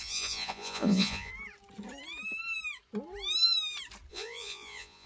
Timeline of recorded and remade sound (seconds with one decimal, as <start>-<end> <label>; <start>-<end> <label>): 0.0-1.3 remade; 1.3-4.1 recorded; 4.1-5.1 remade